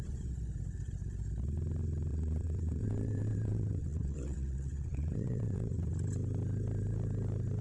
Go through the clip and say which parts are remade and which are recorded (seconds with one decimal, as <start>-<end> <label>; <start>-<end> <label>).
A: 0.0-2.1 recorded; 2.1-5.9 remade; 5.9-7.6 recorded